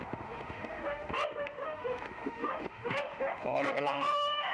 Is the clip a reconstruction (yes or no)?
yes